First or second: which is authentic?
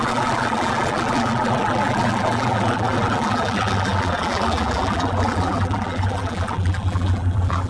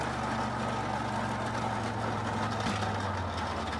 second